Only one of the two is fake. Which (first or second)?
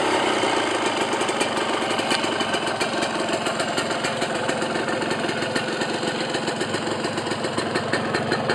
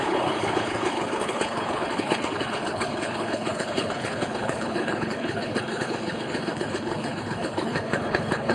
second